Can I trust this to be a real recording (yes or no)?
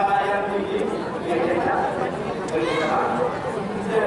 no